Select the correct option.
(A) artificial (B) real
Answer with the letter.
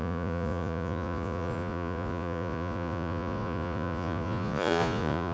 A